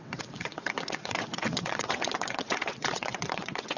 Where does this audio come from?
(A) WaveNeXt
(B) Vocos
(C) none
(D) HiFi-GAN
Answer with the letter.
A